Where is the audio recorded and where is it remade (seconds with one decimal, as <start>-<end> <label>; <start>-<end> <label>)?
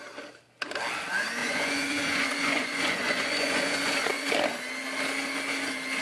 0.0-1.4 recorded; 1.4-4.3 remade; 4.3-6.0 recorded